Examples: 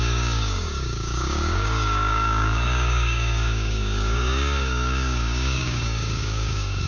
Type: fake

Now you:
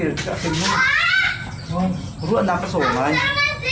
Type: real